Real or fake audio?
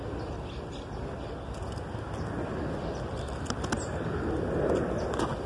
real